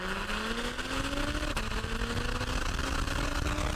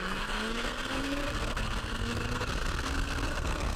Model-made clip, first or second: second